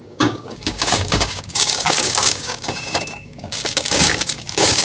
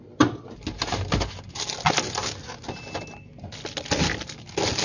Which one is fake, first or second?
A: first